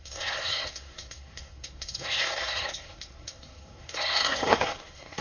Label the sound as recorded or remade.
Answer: remade